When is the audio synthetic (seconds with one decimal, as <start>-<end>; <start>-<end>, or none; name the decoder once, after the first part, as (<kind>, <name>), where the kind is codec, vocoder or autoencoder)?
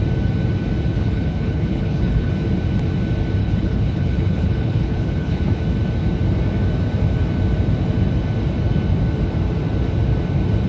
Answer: 0.9-2.3 (codec, HILCodec); 3.4-5.4